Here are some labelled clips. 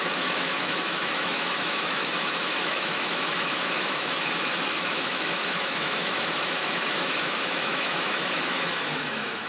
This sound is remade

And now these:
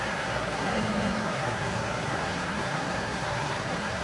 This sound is remade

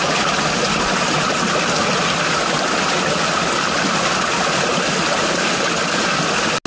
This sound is recorded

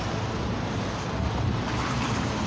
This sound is remade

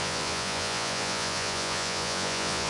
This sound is remade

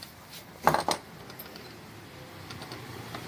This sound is recorded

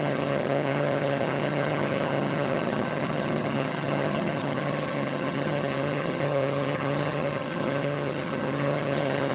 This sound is remade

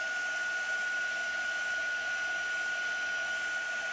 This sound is recorded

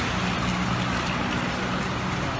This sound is recorded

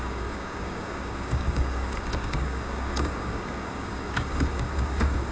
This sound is remade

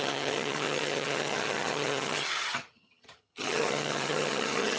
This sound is remade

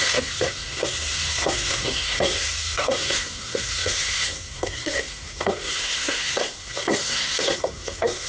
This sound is remade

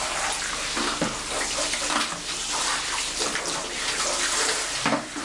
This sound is remade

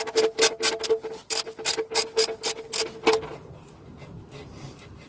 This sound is recorded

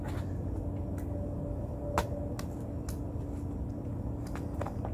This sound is recorded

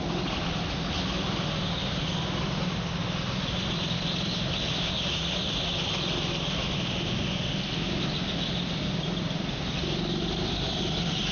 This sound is recorded